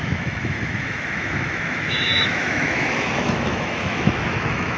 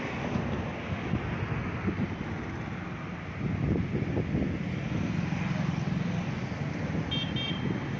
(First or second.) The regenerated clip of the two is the first